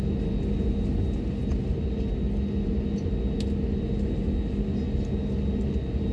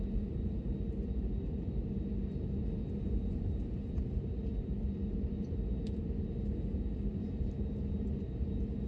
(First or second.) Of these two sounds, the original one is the first